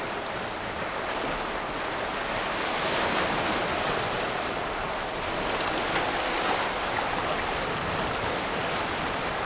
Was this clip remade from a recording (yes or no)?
no